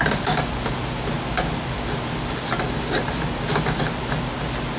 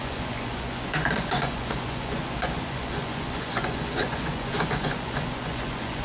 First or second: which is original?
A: first